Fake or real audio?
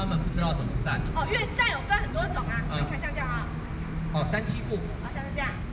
real